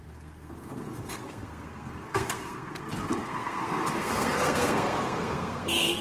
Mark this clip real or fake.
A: fake